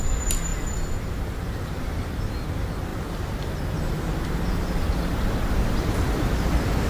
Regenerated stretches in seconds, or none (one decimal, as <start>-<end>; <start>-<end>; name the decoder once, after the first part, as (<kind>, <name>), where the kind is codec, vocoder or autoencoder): none